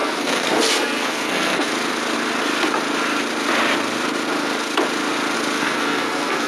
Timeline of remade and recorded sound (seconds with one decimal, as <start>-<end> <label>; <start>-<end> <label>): 0.0-1.7 remade; 1.7-5.6 recorded; 5.6-6.5 remade